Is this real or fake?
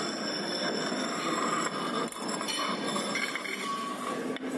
real